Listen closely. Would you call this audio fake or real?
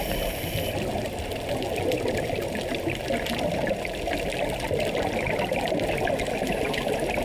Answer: real